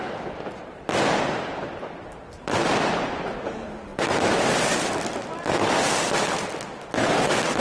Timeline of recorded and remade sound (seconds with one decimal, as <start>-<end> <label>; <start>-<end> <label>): 0.0-7.6 remade

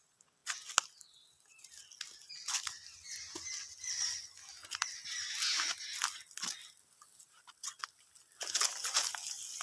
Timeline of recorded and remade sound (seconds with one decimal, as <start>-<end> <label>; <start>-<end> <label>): 0.0-9.6 recorded

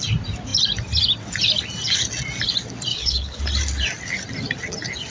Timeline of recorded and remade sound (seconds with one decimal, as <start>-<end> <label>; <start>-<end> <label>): 0.0-2.9 recorded; 2.9-3.4 remade; 3.4-5.1 recorded

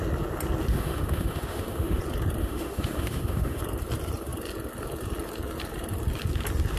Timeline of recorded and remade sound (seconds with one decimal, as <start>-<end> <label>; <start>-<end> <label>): 0.0-0.7 recorded; 0.7-2.0 remade; 2.0-2.4 recorded; 2.4-3.6 remade; 3.6-6.8 recorded

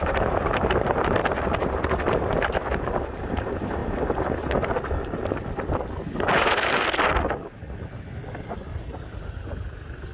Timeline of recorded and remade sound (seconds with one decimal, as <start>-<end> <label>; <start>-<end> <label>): 0.0-1.2 remade; 1.2-3.3 recorded; 3.3-3.8 remade; 3.8-9.0 recorded; 9.0-10.1 remade

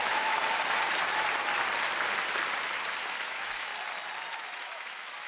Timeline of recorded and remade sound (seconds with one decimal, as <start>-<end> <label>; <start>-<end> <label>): 0.0-0.4 remade; 0.4-3.0 recorded; 3.0-3.7 remade; 3.7-4.3 recorded; 4.3-5.3 remade

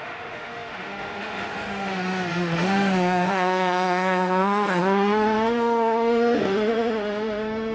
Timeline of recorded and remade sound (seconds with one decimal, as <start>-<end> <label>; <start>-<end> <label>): 0.0-7.7 remade

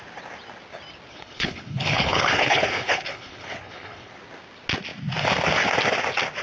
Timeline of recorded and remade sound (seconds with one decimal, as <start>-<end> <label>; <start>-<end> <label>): 0.0-1.1 recorded; 1.1-4.1 remade; 4.1-6.4 recorded